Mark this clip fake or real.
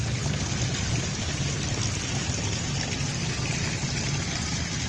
real